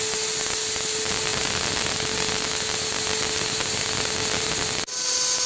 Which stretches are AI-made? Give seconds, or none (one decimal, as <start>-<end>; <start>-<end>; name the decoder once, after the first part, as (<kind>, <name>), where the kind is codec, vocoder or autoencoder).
none